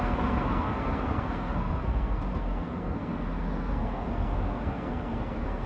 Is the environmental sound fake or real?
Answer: fake